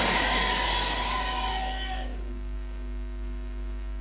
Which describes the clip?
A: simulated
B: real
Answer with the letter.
A